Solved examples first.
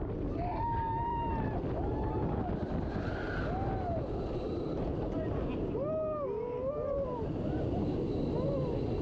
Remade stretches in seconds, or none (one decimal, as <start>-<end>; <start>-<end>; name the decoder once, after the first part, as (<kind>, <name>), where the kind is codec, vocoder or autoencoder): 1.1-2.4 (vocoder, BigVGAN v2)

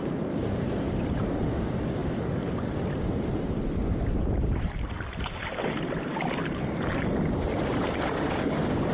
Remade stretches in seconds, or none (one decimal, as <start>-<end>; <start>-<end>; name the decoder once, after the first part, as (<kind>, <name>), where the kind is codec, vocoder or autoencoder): 0.0-6.4 (vocoder, BigVGAN v2); 7.6-8.9

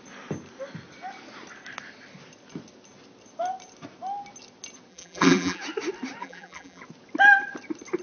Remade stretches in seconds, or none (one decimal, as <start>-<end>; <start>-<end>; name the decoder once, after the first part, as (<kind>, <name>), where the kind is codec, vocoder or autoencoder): 4.9-5.6 (vocoder, BigVGAN v2); 6.2-6.8